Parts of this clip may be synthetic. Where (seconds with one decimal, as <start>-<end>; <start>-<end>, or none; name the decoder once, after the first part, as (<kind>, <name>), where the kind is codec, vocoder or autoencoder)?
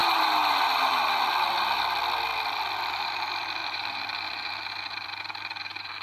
0.5-2.3 (vocoder, BigVGAN v2); 3.0-6.0